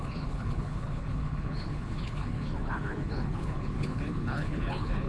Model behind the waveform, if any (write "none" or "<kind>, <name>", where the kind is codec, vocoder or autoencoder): codec, HILCodec